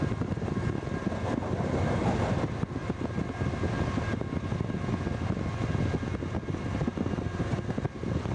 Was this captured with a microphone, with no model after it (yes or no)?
yes